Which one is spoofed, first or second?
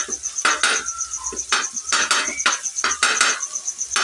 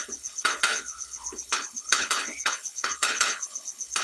second